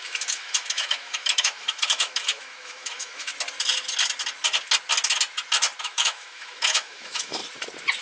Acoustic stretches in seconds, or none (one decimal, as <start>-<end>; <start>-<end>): 3.3-5.8; 7.4-8.0